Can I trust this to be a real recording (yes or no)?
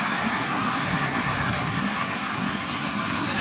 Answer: no